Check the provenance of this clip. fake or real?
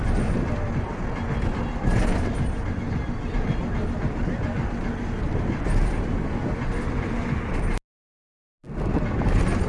real